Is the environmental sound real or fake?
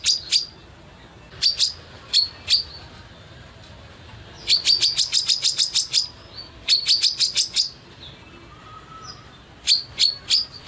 real